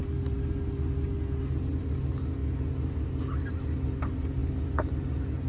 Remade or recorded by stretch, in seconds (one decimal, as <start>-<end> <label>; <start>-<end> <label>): 0.0-5.5 recorded